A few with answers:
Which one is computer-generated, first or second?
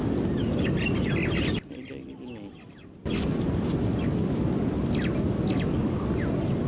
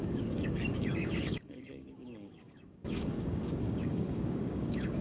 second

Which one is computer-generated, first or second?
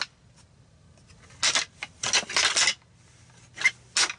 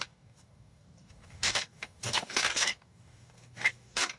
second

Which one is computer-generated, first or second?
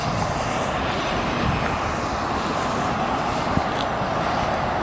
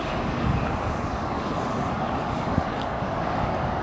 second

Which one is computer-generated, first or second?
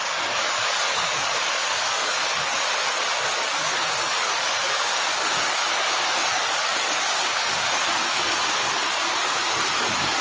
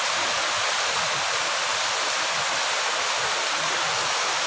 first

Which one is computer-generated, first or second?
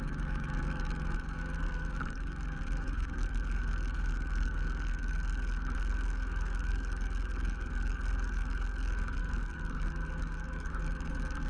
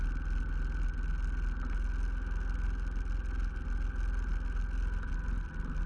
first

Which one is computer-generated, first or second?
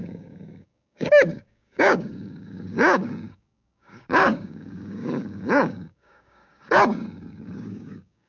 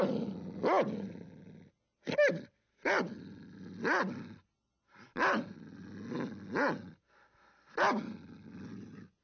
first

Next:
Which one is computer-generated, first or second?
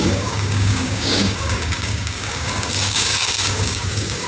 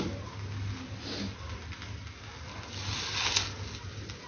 first